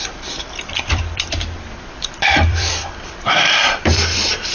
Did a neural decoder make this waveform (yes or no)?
yes